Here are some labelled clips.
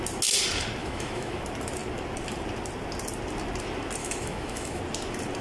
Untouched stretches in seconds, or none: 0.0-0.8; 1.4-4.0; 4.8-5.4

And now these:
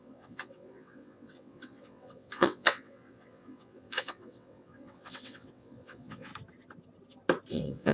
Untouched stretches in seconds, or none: 6.3-7.5

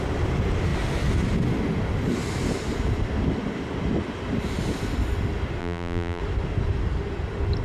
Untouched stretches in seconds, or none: 0.0-5.6; 6.2-7.6

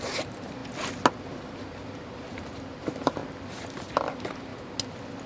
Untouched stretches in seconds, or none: 0.6-1.2; 3.2-4.1; 4.5-5.3